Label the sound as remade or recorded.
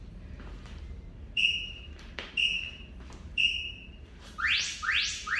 remade